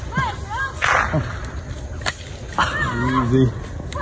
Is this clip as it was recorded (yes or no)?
yes